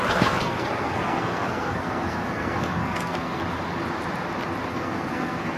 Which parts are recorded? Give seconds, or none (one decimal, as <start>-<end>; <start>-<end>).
3.4-4.7